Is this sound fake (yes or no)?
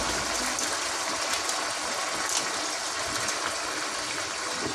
no